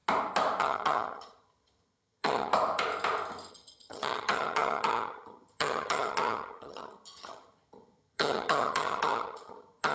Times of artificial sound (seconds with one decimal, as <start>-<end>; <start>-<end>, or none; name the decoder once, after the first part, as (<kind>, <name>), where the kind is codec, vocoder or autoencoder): 0.6-2.5 (vocoder, HiFi-GAN); 3.5-9.9